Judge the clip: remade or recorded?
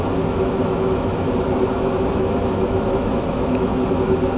remade